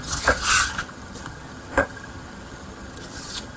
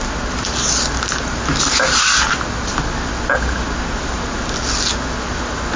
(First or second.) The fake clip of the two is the first